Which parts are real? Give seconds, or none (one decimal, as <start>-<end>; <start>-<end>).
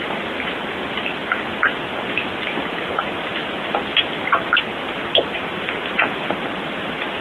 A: 0.0-7.2